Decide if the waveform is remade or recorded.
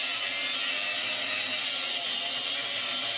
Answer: recorded